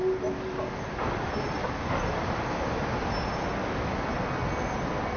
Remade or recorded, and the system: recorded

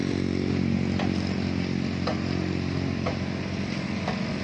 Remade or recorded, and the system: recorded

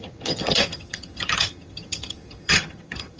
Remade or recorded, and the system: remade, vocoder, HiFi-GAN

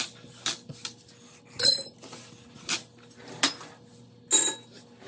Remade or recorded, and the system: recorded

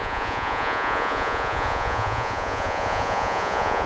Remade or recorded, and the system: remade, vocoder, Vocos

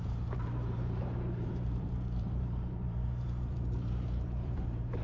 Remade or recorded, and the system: remade, vocoder, BigVGAN v2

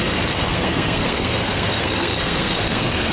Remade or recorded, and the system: remade, codec, SNAC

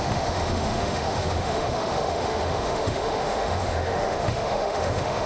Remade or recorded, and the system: remade, autoencoder, DAC-VAE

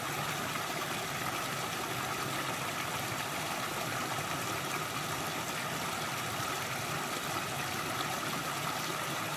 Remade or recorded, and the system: recorded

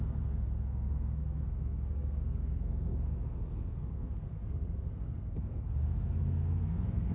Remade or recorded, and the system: remade, codec, SNAC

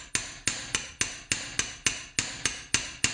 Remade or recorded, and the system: recorded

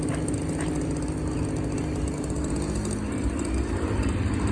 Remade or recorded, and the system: recorded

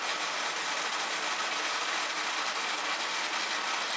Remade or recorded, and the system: recorded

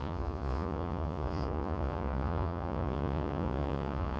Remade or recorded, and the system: remade, vocoder, Vocos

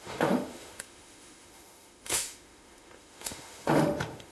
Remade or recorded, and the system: remade, autoencoder, DAC-VAE